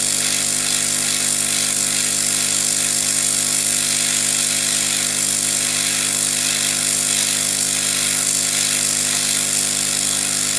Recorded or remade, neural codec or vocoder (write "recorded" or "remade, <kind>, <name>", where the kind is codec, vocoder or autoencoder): recorded